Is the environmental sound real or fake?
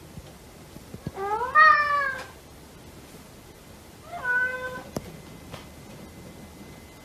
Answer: real